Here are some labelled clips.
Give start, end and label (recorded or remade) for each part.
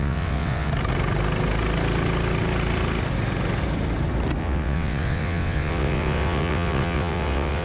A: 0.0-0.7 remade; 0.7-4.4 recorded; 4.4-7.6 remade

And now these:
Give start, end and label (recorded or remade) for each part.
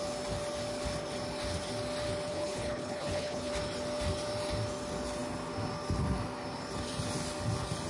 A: 0.0-2.3 recorded; 2.3-3.5 remade; 3.5-7.9 recorded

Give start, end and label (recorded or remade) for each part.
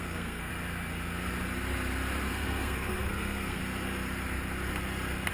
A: 0.0-0.5 remade; 0.5-2.3 recorded; 2.3-3.6 remade; 3.6-5.3 recorded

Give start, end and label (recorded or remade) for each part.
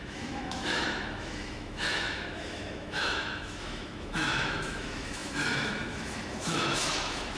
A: 0.0-7.4 remade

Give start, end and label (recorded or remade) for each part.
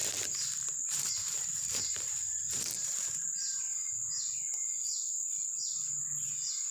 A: 0.0-3.7 remade; 3.7-6.7 recorded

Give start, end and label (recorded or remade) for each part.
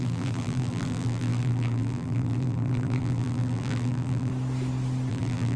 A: 0.0-4.3 remade; 4.3-5.1 recorded; 5.1-5.6 remade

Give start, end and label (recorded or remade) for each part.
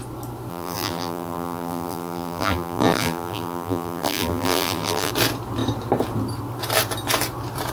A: 0.0-0.5 recorded; 0.5-5.1 remade; 5.1-7.7 recorded